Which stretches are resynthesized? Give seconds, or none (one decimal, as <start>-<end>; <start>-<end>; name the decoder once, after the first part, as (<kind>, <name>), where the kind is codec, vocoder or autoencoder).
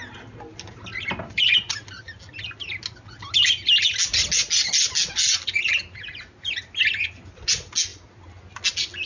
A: none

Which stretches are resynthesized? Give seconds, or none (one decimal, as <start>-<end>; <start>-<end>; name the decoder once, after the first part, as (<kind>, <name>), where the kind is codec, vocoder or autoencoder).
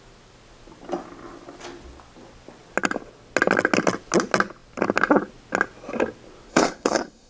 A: 6.5-7.3 (codec, SNAC)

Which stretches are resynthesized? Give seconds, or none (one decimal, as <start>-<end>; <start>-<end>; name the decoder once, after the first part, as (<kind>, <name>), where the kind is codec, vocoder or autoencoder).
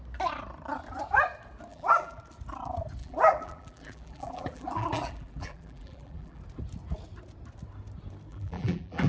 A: 1.7-2.2 (vocoder, BigVGAN v2); 3.0-6.4; 8.3-9.1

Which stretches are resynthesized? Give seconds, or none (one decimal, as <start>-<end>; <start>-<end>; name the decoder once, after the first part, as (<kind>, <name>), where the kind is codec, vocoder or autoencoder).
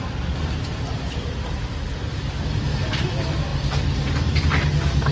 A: none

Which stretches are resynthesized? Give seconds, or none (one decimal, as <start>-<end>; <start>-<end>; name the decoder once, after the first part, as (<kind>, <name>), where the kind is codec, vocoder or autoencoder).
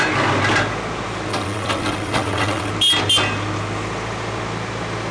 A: 1.3-2.7 (vocoder, WaveNeXt)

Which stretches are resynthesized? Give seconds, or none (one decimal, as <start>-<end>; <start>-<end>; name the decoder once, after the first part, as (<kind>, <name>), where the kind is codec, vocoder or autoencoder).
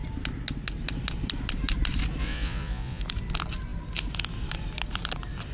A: 2.2-3.0 (vocoder, Vocos)